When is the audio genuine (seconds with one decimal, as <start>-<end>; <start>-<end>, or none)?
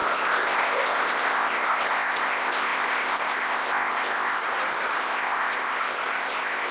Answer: 4.4-5.0